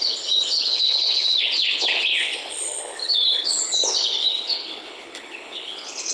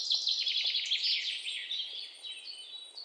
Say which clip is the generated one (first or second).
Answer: first